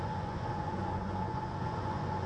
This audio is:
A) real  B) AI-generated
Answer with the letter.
B